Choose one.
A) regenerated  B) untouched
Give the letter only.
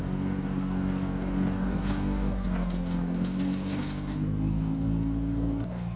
A